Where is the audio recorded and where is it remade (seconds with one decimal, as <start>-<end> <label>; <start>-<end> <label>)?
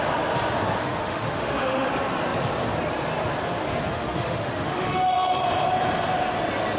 0.0-0.8 recorded; 0.8-1.9 remade; 1.9-3.9 recorded; 3.9-5.4 remade; 5.4-6.8 recorded